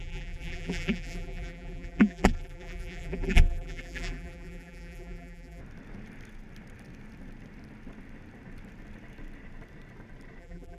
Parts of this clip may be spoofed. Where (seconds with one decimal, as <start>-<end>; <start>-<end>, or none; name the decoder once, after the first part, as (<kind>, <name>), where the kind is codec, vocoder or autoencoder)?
0.0-5.6 (vocoder, BigVGAN v2); 10.4-10.8